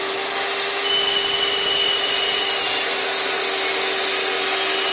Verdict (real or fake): real